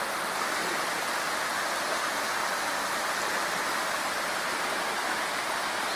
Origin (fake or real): real